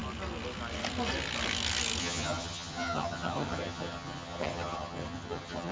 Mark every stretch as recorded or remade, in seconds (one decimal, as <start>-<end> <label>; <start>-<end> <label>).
0.0-2.0 recorded; 2.0-5.7 remade